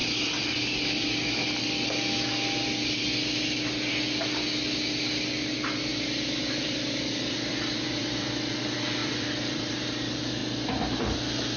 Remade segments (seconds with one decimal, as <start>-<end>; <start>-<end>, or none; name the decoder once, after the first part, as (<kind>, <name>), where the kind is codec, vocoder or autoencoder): 5.9-8.3 (vocoder, BigVGAN v2); 9.0-9.8